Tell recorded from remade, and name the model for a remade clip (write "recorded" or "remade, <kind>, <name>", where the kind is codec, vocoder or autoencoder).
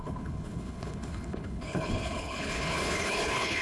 remade, codec, HILCodec